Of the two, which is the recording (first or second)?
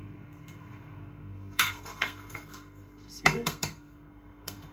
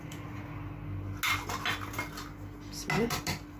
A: second